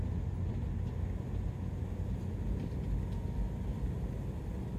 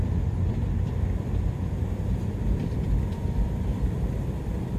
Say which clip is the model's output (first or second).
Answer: second